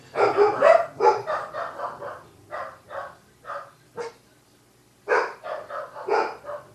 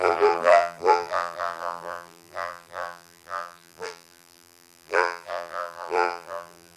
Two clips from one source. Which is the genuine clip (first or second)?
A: first